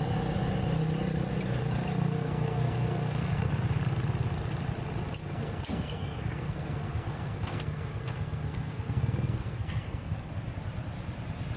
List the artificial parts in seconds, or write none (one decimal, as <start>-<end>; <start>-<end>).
2.2-3.5; 5.2-10.3

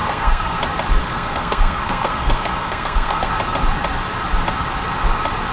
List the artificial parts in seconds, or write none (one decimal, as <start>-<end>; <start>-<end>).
0.0-0.6; 1.0-3.3